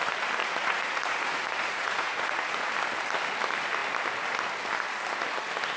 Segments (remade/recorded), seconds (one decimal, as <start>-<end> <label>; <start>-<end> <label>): 0.0-0.4 recorded; 0.4-2.7 remade; 2.7-5.8 recorded